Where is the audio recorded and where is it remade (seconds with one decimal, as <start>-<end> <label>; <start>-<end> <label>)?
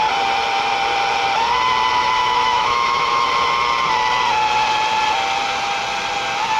0.0-2.2 recorded; 2.2-3.3 remade; 3.3-6.6 recorded